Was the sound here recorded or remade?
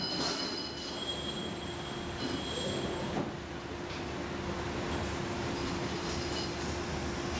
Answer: recorded